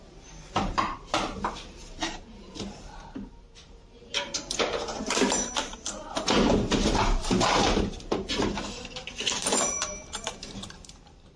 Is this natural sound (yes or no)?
no